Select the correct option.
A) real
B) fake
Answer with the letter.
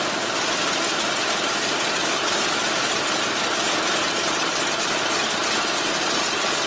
A